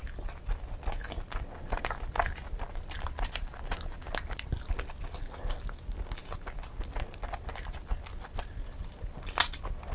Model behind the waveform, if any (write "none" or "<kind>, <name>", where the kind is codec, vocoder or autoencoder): none